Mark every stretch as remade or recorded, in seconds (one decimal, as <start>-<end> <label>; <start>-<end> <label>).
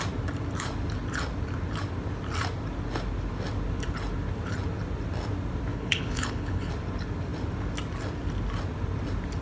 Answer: 0.0-5.7 recorded; 5.7-6.7 remade; 6.7-9.4 recorded